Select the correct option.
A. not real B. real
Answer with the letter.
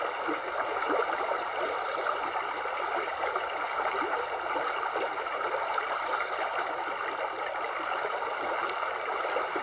B